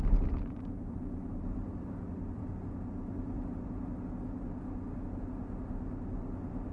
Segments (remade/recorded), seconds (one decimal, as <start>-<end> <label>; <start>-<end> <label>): 0.0-2.4 remade; 2.4-6.7 recorded